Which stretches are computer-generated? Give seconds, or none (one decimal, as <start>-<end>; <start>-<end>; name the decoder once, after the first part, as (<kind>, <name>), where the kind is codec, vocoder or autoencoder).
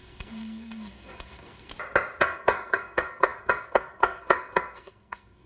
0.0-1.7 (codec, SNAC); 2.2-5.5